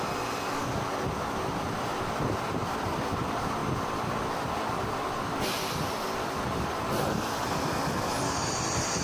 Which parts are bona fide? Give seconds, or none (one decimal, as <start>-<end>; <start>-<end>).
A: 0.0-9.0